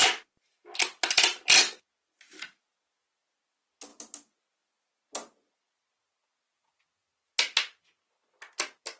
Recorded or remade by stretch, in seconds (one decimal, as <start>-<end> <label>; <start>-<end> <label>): 0.0-9.0 recorded